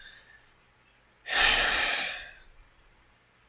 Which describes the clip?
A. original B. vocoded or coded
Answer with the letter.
A